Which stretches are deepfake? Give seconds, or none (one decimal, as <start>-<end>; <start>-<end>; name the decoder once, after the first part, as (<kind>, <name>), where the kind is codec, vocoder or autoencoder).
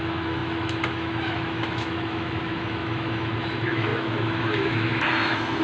0.0-5.6 (autoencoder, DAC-VAE)